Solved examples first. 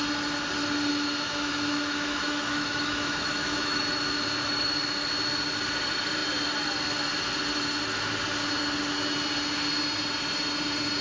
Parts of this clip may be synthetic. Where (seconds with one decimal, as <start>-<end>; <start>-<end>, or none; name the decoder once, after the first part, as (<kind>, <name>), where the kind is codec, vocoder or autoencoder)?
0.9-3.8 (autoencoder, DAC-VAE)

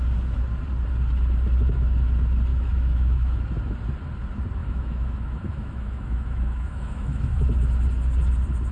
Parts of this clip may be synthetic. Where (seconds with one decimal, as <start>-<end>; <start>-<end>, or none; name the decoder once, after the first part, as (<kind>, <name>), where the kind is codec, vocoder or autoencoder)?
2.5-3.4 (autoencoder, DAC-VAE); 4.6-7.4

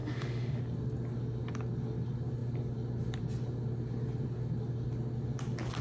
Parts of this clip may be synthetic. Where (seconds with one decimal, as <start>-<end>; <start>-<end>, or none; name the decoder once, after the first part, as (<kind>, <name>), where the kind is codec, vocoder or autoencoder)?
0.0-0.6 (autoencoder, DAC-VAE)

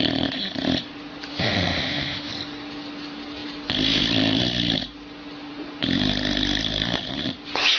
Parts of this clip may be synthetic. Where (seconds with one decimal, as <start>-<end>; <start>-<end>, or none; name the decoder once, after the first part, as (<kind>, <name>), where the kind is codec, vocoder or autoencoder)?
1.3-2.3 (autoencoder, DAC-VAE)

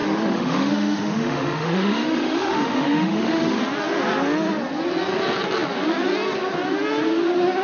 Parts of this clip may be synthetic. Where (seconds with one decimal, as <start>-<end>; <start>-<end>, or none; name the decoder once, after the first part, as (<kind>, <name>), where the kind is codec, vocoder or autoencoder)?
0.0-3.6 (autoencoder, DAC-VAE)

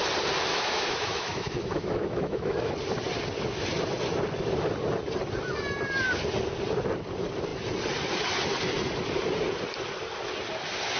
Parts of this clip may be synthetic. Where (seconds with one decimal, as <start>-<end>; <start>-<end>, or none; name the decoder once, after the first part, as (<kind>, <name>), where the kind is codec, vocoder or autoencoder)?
0.5-2.7 (autoencoder, DAC-VAE)

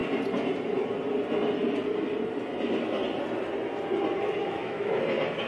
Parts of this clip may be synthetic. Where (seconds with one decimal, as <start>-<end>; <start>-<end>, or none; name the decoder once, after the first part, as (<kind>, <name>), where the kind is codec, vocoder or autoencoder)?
4.4-5.0 (autoencoder, DAC-VAE)